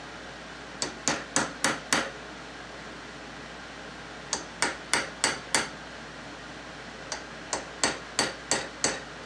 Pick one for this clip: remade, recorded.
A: recorded